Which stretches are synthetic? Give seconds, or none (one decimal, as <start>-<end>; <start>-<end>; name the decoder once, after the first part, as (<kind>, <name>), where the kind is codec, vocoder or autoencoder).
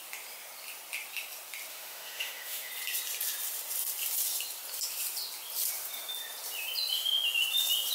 1.7-2.7 (autoencoder, DAC-VAE)